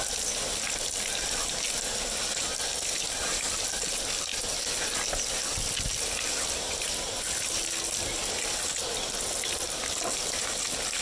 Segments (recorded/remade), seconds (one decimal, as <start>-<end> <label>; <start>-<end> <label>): 0.0-11.0 recorded